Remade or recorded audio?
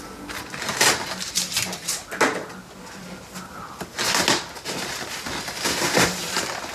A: recorded